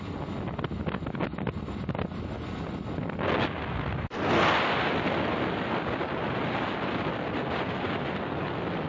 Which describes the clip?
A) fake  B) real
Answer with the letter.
B